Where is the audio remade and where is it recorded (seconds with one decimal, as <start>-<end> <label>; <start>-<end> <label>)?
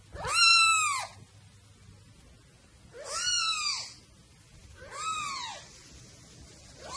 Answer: 0.0-7.0 recorded